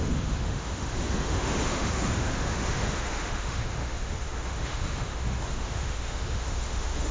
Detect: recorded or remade remade